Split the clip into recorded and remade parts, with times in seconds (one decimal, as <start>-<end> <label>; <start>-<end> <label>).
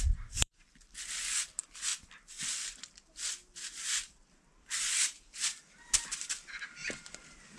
0.0-0.4 recorded; 0.4-0.9 remade; 0.9-1.9 recorded; 1.9-2.4 remade; 2.4-3.3 recorded; 3.3-5.6 remade; 5.6-6.8 recorded; 6.8-7.6 remade